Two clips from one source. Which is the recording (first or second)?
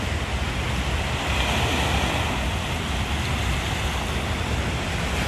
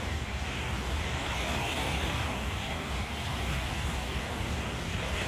first